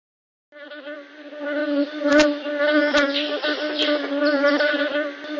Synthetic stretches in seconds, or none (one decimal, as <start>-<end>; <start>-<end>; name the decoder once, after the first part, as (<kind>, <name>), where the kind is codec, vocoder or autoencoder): none